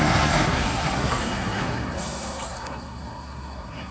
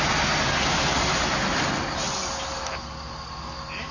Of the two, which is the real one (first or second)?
second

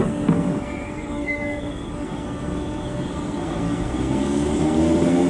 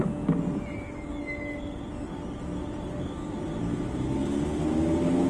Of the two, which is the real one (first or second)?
second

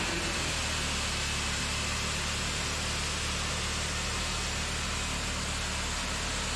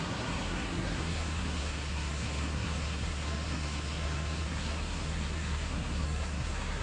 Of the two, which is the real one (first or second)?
first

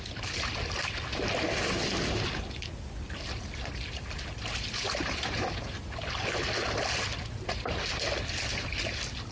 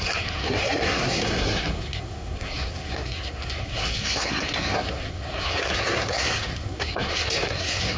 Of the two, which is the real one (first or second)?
first